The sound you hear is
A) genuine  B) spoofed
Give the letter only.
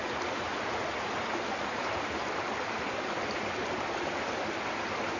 A